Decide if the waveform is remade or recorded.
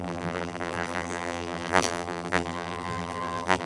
remade